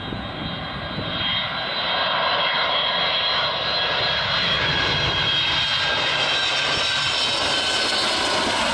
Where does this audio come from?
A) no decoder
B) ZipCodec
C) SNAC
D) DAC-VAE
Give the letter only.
A